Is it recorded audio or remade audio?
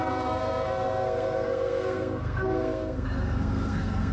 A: remade